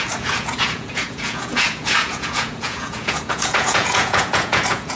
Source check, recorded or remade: remade